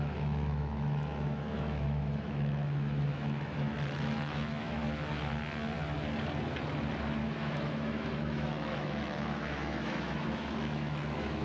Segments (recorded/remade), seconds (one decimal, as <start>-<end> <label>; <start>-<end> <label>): 0.0-4.8 remade; 4.8-7.2 recorded; 7.2-11.4 remade